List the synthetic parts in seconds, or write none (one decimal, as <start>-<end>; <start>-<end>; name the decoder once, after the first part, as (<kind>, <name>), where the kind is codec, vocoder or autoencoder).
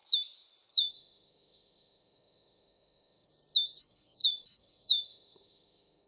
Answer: 0.7-3.3 (autoencoder, DAC-VAE); 3.8-6.1